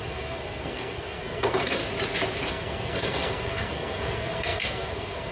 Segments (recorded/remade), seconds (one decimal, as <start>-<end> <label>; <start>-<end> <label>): 0.0-1.8 remade; 1.8-2.5 recorded; 2.5-5.3 remade